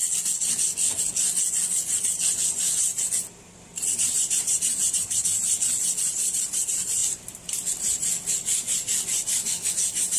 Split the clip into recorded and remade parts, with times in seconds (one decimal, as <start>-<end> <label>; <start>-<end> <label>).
0.0-4.1 recorded; 4.1-5.4 remade; 5.4-6.0 recorded; 6.0-7.0 remade; 7.0-9.7 recorded; 9.7-10.2 remade

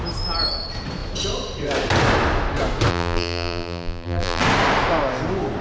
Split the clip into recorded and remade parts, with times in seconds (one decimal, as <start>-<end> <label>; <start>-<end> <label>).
0.0-2.9 recorded; 2.9-4.4 remade; 4.4-5.6 recorded

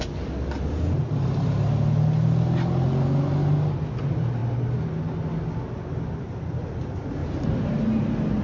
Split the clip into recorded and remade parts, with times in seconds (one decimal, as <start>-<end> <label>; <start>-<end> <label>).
0.0-7.2 recorded; 7.2-7.7 remade; 7.7-8.4 recorded

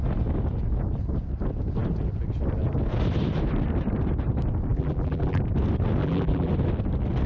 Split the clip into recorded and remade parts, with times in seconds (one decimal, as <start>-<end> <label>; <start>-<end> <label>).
0.0-4.7 recorded; 4.7-5.4 remade; 5.4-6.0 recorded; 6.0-6.5 remade; 6.5-7.3 recorded